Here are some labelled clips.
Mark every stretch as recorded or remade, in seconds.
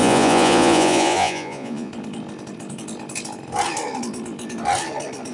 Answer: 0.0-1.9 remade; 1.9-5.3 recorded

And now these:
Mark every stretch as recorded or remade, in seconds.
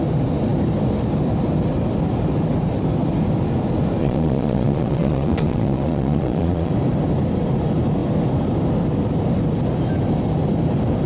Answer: 0.0-4.0 recorded; 4.0-6.7 remade; 6.7-11.1 recorded